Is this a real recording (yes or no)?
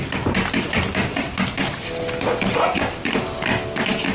yes